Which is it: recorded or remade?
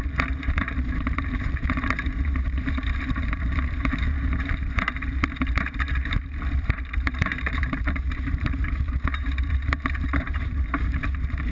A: remade